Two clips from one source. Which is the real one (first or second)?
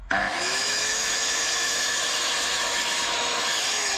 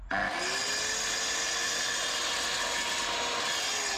second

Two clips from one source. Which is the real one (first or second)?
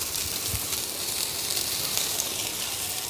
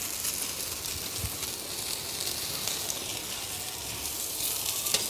second